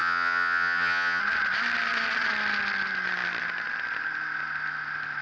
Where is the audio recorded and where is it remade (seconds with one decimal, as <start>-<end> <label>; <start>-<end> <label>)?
0.0-1.2 remade; 1.2-5.2 recorded